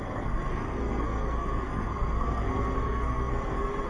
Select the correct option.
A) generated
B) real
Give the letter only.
A